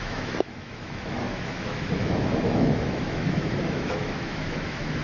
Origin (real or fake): fake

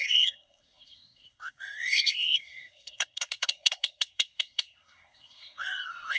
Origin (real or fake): fake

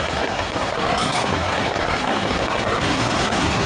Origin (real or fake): fake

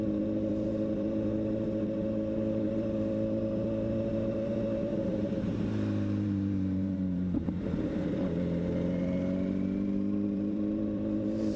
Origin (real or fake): fake